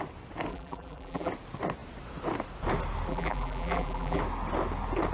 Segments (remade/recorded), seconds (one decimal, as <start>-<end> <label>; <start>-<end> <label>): 0.0-0.5 recorded; 0.5-1.3 remade; 1.3-3.1 recorded; 3.1-4.2 remade; 4.2-5.1 recorded